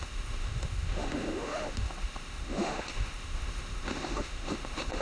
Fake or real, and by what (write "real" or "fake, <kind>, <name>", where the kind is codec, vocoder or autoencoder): fake, autoencoder, DAC-VAE